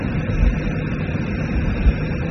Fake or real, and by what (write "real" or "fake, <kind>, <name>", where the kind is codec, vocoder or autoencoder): real